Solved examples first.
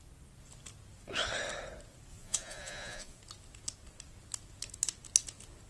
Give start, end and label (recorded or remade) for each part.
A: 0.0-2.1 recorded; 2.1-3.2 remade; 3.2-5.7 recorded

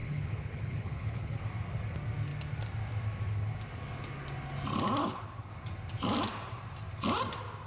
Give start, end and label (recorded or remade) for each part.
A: 0.0-1.4 remade; 1.4-5.0 recorded; 5.0-5.5 remade; 5.5-7.7 recorded

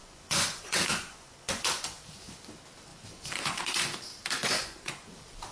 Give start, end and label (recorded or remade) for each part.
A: 0.0-2.3 remade; 2.3-2.9 recorded; 2.9-4.0 remade; 4.0-4.4 recorded; 4.4-5.1 remade; 5.1-5.5 recorded

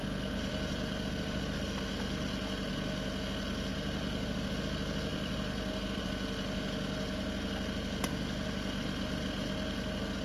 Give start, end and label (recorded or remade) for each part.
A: 0.0-1.4 remade; 1.4-3.7 recorded; 3.7-4.6 remade; 4.6-5.1 recorded; 5.1-6.1 remade; 6.1-10.2 recorded

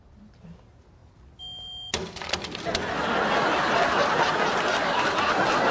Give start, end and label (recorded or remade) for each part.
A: 0.0-5.7 recorded